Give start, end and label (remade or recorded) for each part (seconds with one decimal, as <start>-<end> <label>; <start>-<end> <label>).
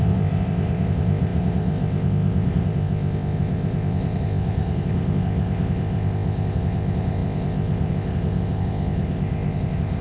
0.0-10.0 remade